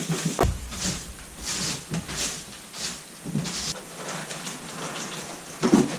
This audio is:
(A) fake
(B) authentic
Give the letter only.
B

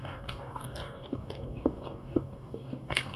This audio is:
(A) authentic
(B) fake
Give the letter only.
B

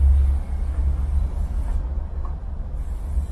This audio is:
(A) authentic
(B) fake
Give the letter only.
A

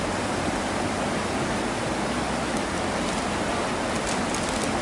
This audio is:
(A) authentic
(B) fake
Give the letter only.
A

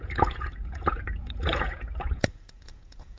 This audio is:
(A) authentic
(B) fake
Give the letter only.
B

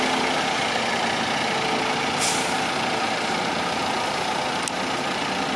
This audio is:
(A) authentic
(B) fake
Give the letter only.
A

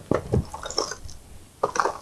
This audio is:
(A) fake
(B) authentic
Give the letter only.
B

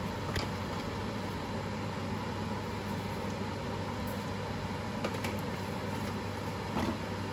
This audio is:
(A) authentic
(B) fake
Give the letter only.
A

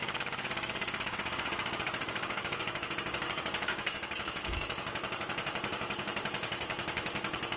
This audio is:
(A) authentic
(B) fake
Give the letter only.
B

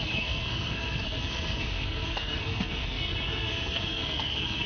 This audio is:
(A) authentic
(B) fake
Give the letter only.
B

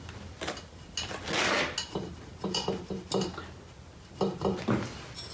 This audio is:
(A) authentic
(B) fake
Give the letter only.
A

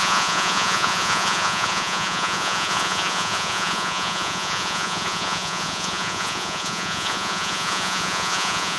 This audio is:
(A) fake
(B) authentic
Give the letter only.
A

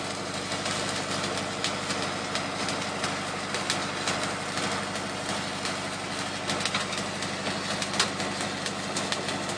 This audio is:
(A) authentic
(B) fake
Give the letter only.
A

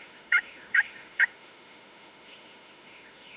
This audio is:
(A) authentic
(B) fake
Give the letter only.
B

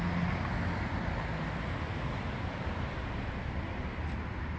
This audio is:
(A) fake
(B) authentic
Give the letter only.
B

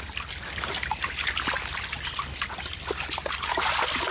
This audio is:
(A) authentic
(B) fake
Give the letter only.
A